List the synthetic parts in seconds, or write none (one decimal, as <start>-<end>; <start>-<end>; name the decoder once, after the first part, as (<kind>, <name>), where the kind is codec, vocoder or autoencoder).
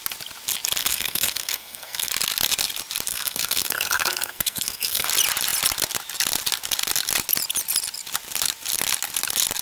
0.8-2.1 (codec, SNAC); 3.1-5.1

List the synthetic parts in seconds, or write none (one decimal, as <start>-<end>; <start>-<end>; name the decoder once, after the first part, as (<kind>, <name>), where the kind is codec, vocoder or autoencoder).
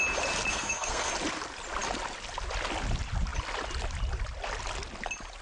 0.5-1.1 (codec, SNAC)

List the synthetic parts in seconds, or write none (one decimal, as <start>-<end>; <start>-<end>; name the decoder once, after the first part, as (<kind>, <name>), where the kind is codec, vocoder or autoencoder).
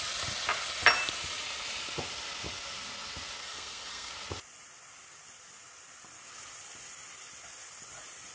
3.4-4.1 (codec, SNAC)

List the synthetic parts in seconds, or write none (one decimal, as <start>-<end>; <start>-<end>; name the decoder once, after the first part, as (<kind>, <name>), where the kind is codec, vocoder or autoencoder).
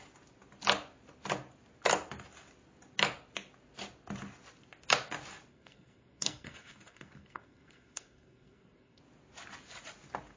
5.5-9.0 (codec, SNAC)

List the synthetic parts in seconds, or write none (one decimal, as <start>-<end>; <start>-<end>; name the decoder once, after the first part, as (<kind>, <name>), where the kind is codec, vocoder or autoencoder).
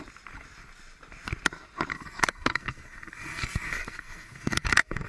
1.9-5.1 (codec, SNAC)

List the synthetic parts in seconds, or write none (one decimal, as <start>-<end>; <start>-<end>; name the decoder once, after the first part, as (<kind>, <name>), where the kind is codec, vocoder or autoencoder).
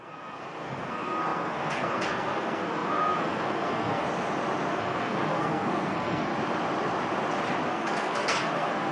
0.0-4.1 (codec, SNAC); 4.7-6.3; 7.7-8.9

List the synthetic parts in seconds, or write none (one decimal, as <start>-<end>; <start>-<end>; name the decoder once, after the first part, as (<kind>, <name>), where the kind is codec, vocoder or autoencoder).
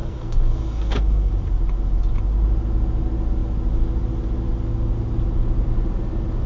0.0-1.3 (codec, SNAC)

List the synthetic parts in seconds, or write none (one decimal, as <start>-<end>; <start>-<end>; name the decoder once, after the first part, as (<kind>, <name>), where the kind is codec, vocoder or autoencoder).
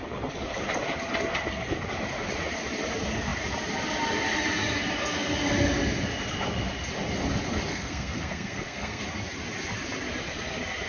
7.7-9.0 (codec, SNAC)